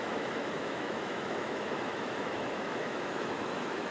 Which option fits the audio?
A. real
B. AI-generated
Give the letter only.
B